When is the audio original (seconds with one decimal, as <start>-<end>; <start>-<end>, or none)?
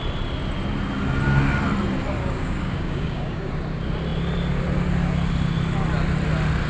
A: 0.0-2.2; 3.5-6.7